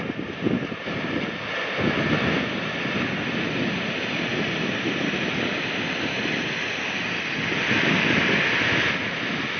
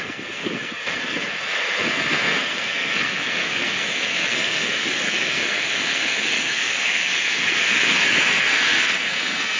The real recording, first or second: first